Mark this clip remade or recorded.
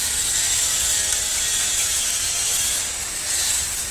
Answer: recorded